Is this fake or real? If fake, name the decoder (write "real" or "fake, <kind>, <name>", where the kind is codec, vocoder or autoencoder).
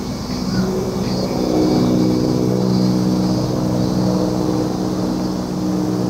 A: real